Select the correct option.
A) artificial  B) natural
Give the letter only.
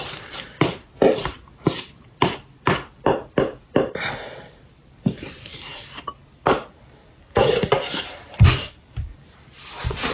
A